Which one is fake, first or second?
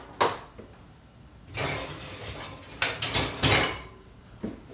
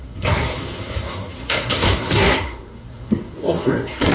second